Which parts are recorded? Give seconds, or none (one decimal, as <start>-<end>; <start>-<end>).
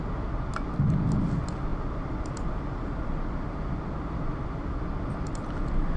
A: 0.0-6.0